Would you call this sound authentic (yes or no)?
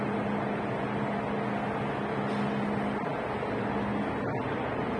yes